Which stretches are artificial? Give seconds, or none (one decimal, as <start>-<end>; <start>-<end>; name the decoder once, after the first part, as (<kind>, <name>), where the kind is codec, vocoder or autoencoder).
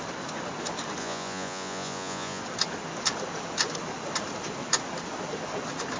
1.0-2.4 (vocoder, Vocos)